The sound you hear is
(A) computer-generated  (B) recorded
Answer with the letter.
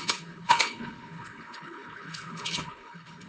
A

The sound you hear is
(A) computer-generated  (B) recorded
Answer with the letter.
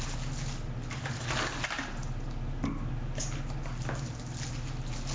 B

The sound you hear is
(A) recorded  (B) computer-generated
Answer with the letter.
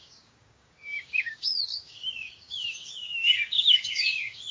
B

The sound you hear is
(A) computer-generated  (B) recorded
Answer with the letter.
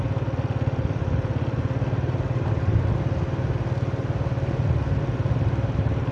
B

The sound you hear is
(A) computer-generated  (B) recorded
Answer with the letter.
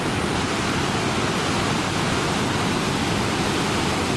B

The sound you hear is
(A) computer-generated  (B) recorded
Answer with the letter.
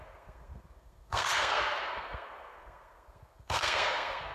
A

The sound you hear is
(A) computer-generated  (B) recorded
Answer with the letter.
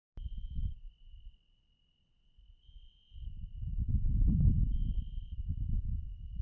B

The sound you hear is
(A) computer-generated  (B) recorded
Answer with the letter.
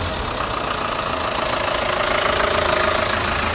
B